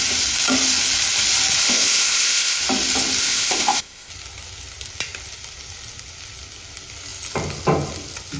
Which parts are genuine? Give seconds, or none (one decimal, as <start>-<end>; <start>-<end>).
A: 0.0-1.6; 2.6-3.2; 4.1-8.4